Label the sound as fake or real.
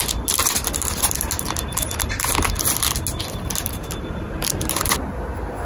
real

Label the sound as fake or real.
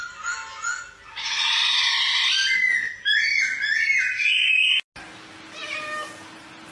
real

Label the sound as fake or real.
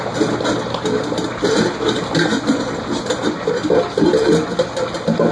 real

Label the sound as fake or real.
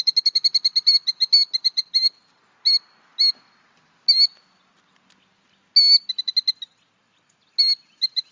real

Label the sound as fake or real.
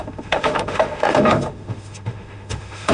fake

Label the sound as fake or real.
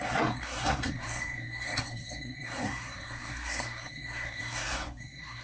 fake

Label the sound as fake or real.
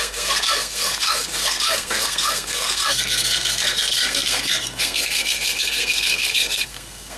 fake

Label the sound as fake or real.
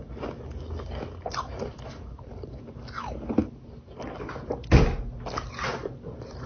real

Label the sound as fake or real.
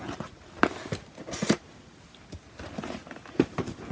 real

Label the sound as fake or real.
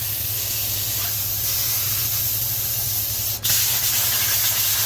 real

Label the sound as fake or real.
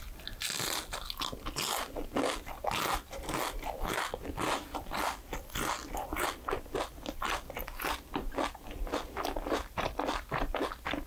real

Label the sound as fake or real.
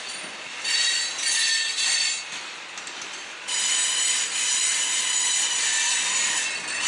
real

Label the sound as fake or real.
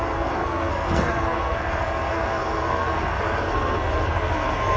fake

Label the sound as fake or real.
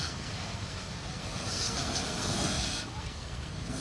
fake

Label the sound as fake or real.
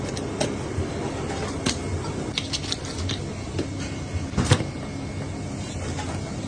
real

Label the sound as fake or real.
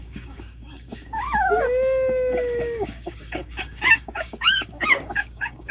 fake